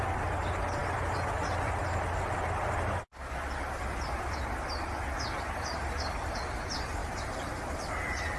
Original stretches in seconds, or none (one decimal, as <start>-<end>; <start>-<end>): 0.0-7.0

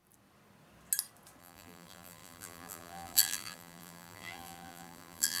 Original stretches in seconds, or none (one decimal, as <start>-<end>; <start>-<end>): 0.0-1.4

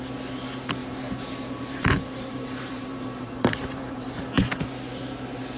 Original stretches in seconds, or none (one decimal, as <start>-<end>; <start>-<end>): 0.0-0.8; 4.2-5.6